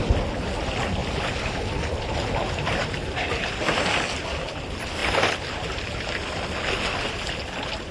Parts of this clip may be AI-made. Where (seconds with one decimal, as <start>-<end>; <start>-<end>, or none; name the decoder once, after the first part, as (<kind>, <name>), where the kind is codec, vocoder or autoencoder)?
none